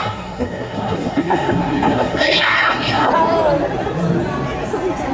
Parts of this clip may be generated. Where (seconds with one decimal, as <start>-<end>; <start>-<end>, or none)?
0.0-3.1